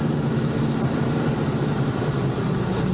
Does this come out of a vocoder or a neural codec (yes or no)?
no